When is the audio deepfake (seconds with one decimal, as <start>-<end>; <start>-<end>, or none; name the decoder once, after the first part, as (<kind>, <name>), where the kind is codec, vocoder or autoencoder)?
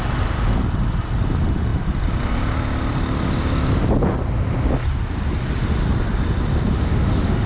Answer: 6.7-7.5 (autoencoder, DAC-VAE)